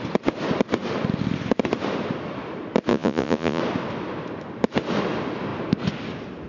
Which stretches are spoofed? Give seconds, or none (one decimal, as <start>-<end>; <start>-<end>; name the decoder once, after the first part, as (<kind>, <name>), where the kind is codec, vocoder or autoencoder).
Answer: 2.9-3.6 (vocoder, Vocos)